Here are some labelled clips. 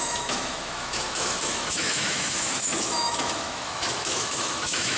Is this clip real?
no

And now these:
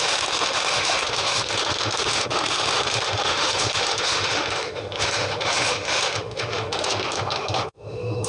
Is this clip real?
no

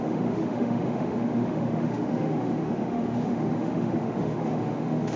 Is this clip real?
no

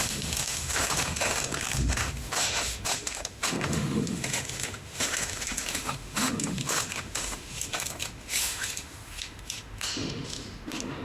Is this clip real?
no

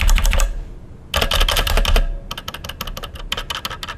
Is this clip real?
yes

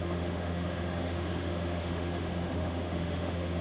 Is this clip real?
no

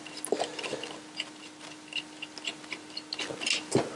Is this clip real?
yes